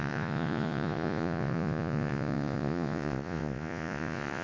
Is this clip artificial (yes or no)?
yes